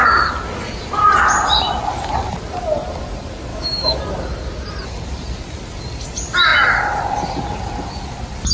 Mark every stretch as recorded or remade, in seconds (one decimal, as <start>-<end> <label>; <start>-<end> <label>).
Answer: 0.0-3.5 recorded; 3.5-4.0 remade; 4.0-8.5 recorded